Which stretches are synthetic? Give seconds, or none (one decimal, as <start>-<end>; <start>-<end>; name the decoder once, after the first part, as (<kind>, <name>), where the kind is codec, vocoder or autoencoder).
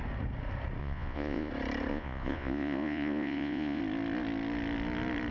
0.8-1.5 (vocoder, Vocos); 1.9-3.8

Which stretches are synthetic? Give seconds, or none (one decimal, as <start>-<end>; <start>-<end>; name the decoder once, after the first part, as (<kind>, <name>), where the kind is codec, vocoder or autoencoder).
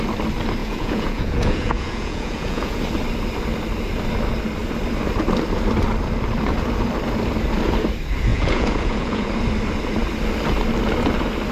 0.6-2.8 (vocoder, Vocos); 8.3-9.3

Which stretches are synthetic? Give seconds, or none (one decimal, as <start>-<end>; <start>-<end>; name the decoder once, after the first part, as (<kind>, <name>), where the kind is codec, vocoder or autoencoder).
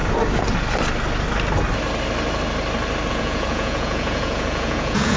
3.1-5.2 (vocoder, Vocos)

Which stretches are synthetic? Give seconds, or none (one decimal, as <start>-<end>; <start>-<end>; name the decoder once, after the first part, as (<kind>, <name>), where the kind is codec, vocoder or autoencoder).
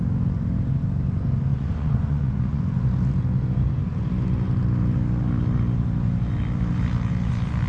1.5-2.6 (vocoder, Vocos)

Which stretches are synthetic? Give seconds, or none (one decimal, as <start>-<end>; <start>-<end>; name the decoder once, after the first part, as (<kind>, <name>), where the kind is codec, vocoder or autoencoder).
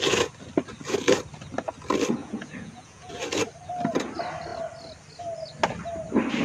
2.2-3.1 (vocoder, Vocos)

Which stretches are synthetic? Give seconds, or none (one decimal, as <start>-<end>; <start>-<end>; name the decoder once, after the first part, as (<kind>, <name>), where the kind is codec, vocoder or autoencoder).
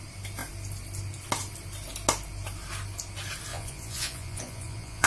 3.5-5.1 (vocoder, Vocos)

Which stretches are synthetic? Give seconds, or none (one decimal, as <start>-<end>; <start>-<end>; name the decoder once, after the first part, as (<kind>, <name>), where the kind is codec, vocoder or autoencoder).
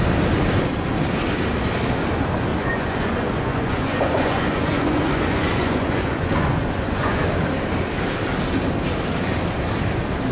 2.5-7.2 (vocoder, Vocos)